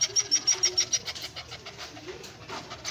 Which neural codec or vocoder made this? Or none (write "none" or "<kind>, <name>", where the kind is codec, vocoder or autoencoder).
none